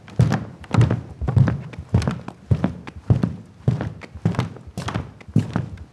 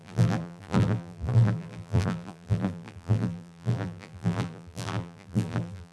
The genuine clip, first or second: first